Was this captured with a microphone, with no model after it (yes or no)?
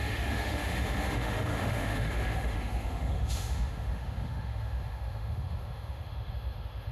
no